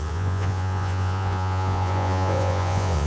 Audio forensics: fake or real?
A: fake